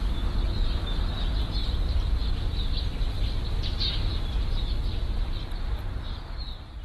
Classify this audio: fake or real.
real